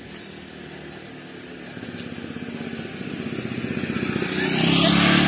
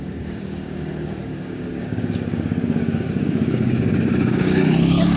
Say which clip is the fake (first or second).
second